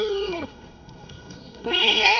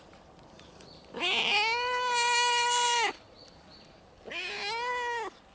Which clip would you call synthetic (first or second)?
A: first